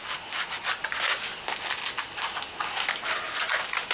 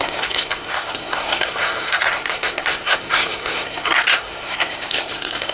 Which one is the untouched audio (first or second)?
first